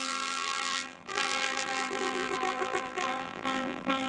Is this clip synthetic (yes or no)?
yes